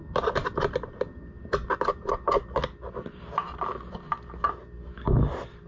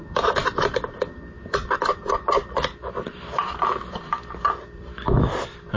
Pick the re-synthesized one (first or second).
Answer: second